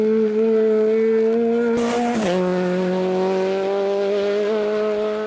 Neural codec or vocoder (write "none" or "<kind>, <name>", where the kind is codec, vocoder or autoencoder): none